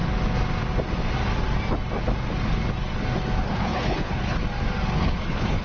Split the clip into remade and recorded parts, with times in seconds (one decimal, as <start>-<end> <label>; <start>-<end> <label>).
0.0-3.4 recorded; 3.4-4.4 remade; 4.4-5.0 recorded; 5.0-5.6 remade